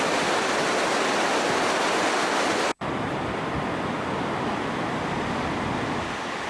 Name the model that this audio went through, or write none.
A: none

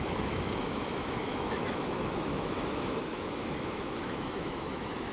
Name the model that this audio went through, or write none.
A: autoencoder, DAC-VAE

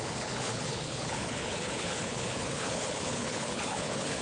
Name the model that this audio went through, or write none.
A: codec, HILCodec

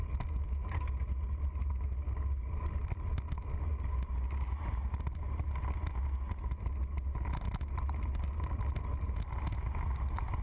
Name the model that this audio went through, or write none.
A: none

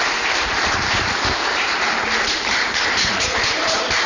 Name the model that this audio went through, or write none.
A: vocoder, BigVGAN v2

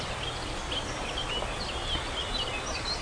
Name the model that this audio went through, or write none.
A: none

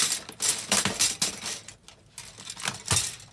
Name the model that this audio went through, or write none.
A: none